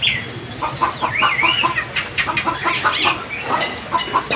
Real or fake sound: real